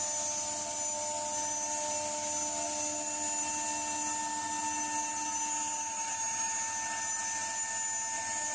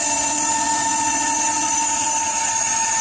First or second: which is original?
first